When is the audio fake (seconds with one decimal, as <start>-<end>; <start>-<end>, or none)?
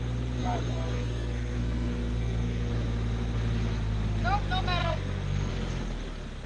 0.4-2.7; 4.8-5.5